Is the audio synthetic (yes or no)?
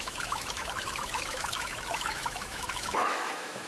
yes